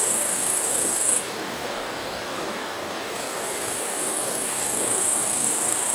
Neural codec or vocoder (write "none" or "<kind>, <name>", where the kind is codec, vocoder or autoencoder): codec, DAC